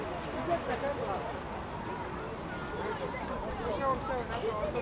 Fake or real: real